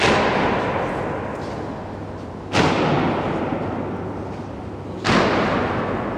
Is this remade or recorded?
recorded